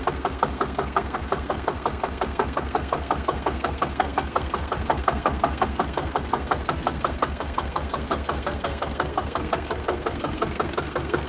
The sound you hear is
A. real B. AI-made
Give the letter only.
B